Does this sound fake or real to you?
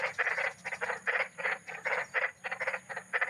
real